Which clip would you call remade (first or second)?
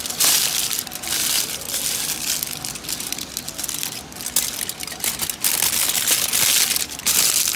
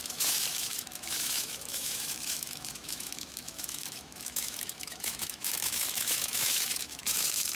second